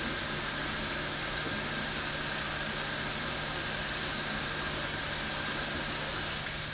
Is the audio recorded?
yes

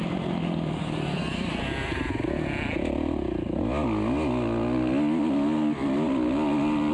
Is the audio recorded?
yes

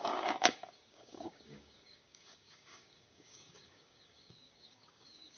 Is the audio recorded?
no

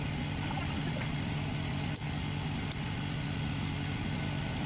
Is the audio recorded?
yes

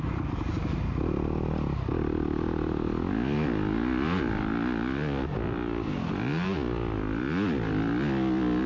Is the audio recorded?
yes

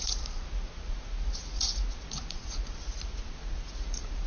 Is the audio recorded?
no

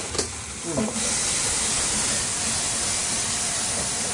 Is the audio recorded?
yes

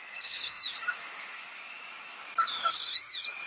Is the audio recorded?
no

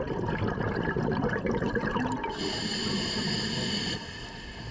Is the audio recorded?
yes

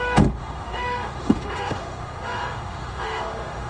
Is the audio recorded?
no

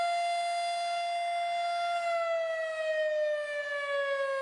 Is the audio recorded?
yes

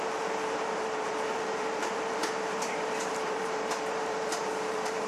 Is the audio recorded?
no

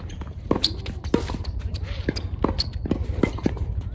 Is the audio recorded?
yes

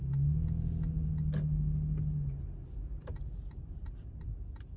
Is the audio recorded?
yes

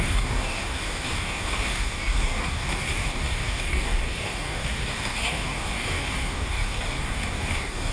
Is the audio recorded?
no